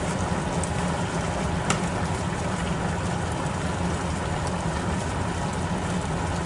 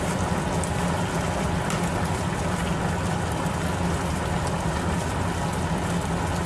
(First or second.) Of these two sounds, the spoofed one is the first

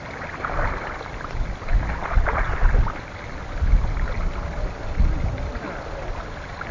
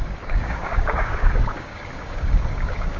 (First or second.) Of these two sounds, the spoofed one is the second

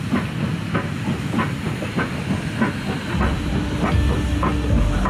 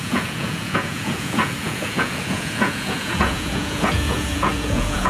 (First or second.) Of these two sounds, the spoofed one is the second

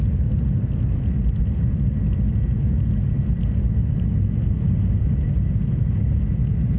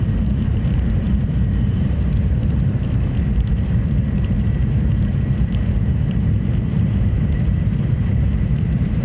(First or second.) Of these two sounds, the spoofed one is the second